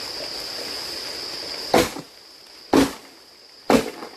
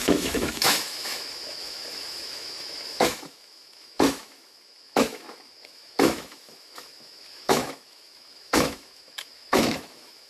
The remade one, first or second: second